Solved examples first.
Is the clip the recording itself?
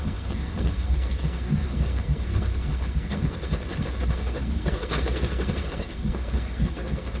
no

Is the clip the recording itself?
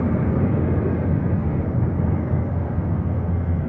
no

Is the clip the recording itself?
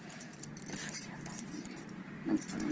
no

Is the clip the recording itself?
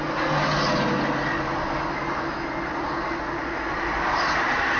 yes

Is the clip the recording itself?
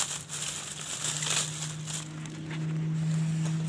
yes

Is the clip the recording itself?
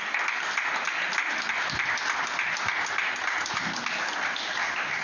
yes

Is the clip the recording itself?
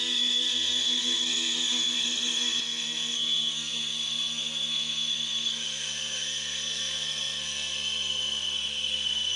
no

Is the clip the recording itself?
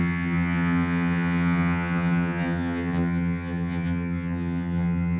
no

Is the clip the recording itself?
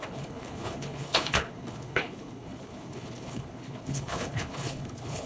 no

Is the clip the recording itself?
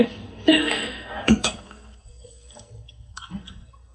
no